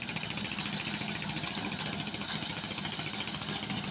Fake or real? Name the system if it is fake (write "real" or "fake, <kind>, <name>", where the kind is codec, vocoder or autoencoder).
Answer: real